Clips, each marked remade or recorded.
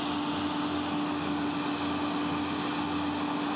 recorded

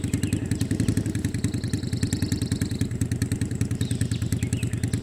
recorded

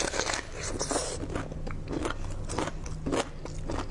recorded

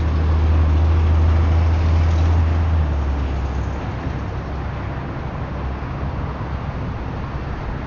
recorded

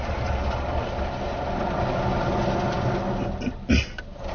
recorded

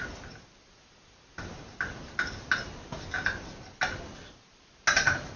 recorded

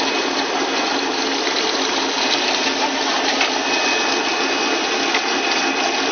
recorded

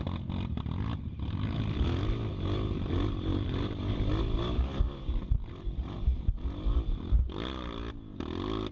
recorded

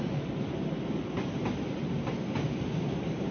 recorded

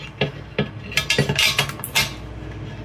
recorded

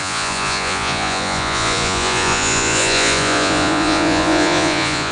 remade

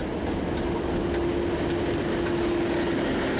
recorded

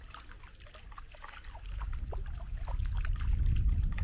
recorded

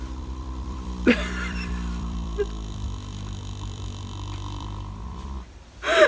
remade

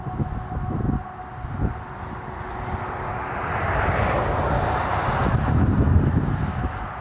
recorded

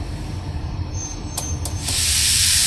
remade